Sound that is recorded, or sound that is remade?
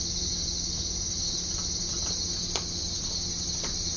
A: recorded